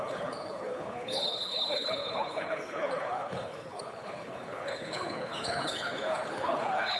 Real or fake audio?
fake